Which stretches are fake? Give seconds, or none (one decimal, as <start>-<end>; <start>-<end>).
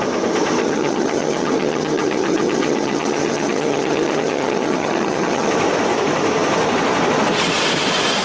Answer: 0.6-5.5